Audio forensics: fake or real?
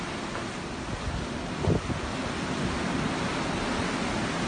real